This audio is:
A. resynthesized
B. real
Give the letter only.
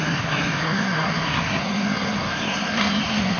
A